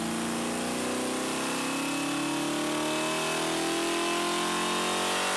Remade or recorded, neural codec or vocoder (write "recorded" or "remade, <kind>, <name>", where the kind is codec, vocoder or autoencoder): recorded